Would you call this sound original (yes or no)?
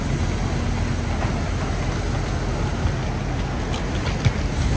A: yes